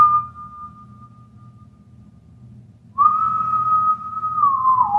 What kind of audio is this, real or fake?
real